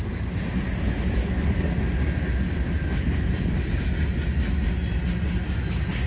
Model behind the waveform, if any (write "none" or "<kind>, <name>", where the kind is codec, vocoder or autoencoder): none